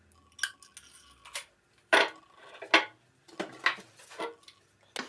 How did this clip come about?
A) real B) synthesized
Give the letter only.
A